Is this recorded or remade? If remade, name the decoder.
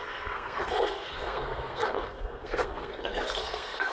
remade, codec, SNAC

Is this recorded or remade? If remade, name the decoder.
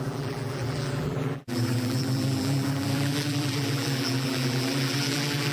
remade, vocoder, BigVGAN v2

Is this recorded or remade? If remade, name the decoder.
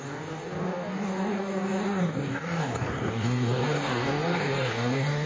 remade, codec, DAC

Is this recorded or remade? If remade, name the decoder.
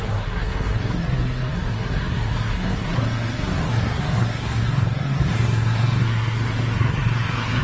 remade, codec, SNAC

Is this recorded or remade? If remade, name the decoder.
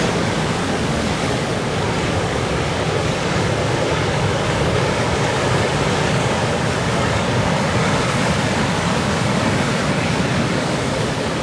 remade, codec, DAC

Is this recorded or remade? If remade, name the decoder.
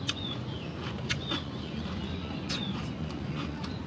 remade, vocoder, Vocos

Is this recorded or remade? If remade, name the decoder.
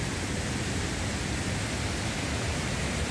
recorded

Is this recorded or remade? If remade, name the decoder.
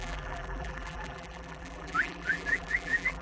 remade, vocoder, BigVGAN v2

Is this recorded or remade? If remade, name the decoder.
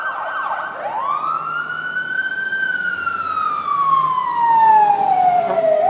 remade, vocoder, BigVGAN v2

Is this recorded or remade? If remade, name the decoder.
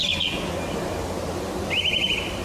recorded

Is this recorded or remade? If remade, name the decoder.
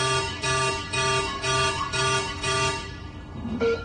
remade, autoencoder, DAC-VAE